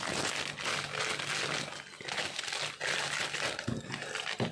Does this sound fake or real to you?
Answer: real